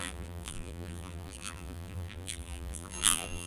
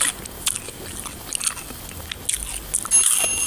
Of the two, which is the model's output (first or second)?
first